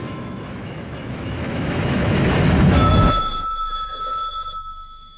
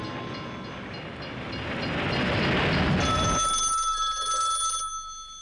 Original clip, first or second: second